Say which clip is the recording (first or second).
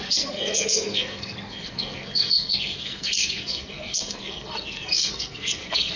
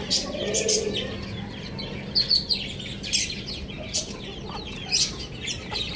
second